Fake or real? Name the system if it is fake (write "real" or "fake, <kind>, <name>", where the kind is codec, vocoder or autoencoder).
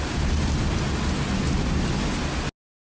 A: real